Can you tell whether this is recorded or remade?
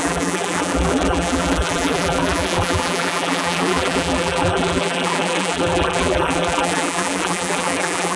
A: remade